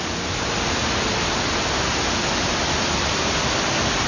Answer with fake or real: real